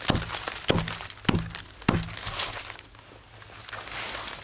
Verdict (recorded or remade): recorded